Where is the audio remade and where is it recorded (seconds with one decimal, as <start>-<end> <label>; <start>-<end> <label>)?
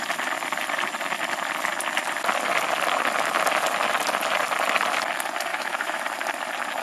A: 0.0-5.5 recorded; 5.5-6.0 remade; 6.0-6.8 recorded